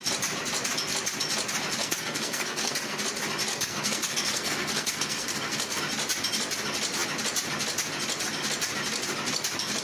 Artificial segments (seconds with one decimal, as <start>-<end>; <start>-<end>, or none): 1.8-3.0; 3.5-5.8